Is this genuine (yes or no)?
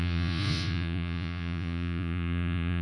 no